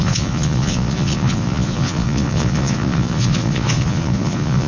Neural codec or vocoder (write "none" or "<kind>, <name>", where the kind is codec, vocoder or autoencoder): vocoder, Vocos